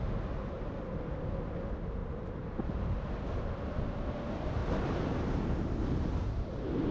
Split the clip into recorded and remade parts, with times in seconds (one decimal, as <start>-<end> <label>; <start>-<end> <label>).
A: 0.0-2.0 recorded; 2.0-2.6 remade; 2.6-4.6 recorded; 4.6-6.9 remade